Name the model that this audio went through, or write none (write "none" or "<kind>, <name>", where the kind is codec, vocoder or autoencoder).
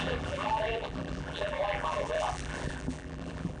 vocoder, BigVGAN v2